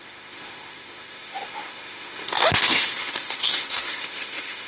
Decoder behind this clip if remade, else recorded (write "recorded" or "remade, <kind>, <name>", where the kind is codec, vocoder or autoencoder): remade, autoencoder, DAC-VAE